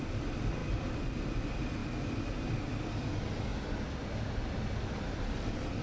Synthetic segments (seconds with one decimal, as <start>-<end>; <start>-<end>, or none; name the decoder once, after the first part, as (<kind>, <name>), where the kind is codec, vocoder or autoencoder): 0.0-0.6 (vocoder, BigVGAN v2); 1.2-1.8; 3.1-3.5; 4.8-5.8